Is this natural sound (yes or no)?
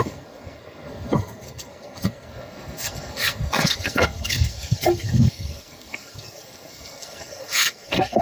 no